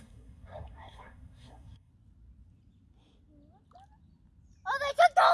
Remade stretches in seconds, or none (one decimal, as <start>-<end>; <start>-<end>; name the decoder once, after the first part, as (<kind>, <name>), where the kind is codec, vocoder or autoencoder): 0.0-1.9 (codec, SNAC)